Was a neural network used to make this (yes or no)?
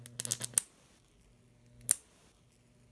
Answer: no